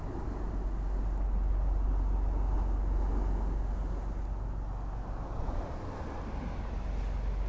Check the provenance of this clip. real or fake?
real